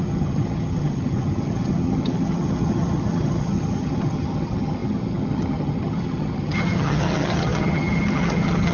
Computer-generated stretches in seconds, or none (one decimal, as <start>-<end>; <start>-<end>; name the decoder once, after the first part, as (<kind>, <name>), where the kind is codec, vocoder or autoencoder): 0.0-8.7 (vocoder, HiFi-GAN)